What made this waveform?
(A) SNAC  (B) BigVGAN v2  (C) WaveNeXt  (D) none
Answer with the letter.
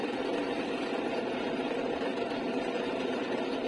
B